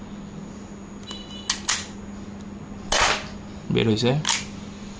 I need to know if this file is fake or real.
real